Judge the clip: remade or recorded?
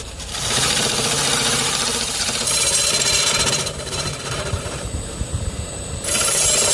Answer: remade